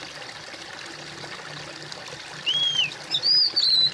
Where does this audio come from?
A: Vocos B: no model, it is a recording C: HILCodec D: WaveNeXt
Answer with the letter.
B